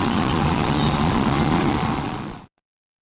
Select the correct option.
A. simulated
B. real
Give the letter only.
A